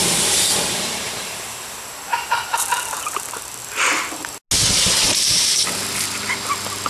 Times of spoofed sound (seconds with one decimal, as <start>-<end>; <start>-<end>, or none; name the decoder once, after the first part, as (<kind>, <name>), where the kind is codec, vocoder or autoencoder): 0.0-3.6 (vocoder, BigVGAN v2)